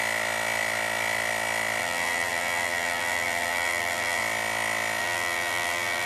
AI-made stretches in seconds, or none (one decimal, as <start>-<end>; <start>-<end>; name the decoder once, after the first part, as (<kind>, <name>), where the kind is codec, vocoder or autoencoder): 1.8-4.2 (vocoder, BigVGAN v2); 5.0-6.1